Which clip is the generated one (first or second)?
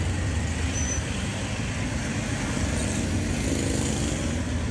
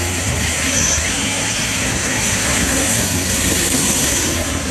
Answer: second